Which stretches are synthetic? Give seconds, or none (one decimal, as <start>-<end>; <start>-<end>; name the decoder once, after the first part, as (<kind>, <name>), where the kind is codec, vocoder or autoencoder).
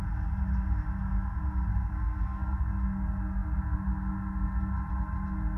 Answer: 1.7-2.6 (codec, SNAC)